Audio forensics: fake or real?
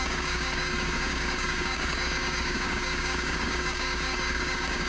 fake